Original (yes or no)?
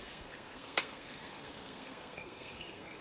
no